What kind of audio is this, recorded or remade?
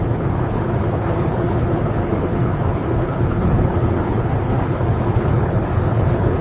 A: remade